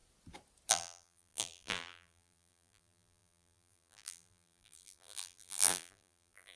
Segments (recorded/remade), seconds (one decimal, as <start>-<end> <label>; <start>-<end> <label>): 0.0-0.7 recorded; 0.7-6.6 remade